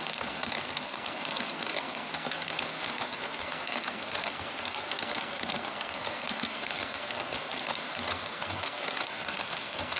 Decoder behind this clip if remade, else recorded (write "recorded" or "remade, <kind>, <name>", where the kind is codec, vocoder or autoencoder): remade, codec, SNAC